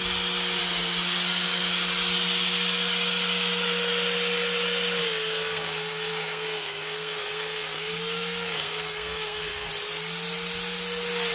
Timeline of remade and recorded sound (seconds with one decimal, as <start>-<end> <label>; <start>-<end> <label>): 0.0-5.0 recorded; 5.0-9.7 remade; 9.7-11.3 recorded